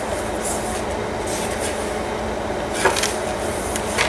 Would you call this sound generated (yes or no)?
no